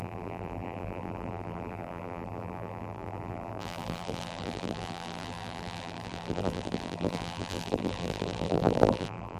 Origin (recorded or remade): remade